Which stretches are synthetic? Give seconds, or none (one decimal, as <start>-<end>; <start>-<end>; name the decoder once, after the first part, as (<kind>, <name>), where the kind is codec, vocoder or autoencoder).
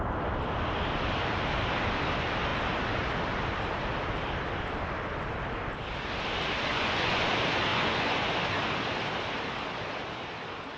6.7-7.3 (vocoder, Vocos); 7.7-8.3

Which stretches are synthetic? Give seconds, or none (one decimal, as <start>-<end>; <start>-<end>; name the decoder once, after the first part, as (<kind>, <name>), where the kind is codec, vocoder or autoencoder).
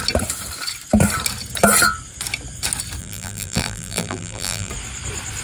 3.0-4.7 (vocoder, BigVGAN v2)